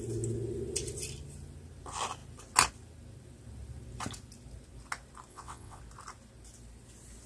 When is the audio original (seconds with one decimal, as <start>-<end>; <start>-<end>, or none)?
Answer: 0.0-5.3; 5.8-7.3